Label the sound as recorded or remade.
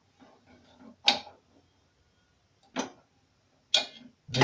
recorded